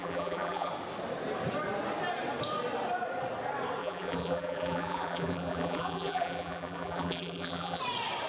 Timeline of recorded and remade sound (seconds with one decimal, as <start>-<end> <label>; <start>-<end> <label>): 0.0-0.7 remade; 0.7-3.8 recorded; 3.8-7.8 remade; 7.8-8.3 recorded